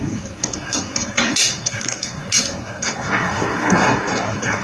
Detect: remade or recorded remade